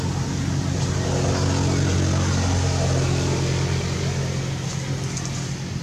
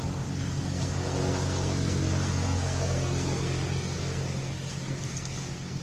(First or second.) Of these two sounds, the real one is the first